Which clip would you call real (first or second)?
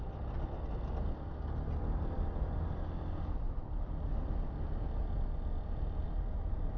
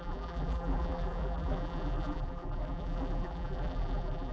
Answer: first